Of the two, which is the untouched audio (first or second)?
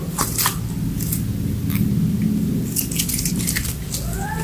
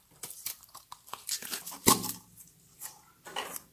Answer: first